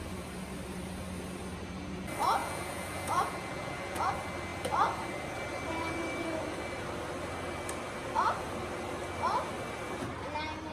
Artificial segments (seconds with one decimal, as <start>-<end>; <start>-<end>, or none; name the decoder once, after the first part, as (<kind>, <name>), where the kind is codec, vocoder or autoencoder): 2.4-4.1 (vocoder, Vocos)